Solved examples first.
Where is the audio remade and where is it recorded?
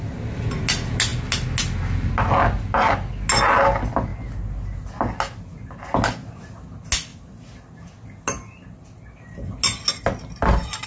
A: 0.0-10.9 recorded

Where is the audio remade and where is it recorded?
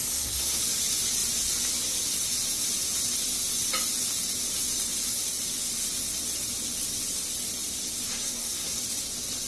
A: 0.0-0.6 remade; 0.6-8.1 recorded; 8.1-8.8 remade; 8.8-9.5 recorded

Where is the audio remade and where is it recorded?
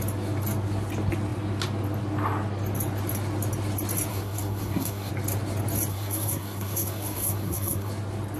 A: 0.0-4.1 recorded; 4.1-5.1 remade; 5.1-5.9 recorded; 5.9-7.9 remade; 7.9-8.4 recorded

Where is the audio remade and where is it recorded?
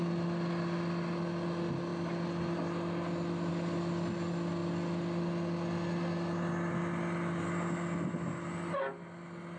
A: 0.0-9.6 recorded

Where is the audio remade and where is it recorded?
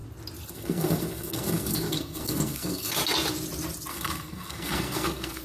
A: 0.0-0.5 recorded; 0.5-3.0 remade; 3.0-3.9 recorded; 3.9-5.4 remade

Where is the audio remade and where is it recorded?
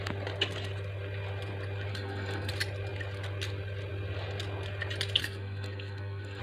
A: 0.0-1.9 recorded; 1.9-2.5 remade; 2.5-5.2 recorded; 5.2-6.4 remade